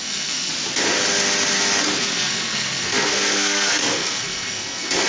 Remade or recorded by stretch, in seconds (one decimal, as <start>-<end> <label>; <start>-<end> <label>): 0.0-0.5 remade; 0.5-2.0 recorded; 2.0-5.1 remade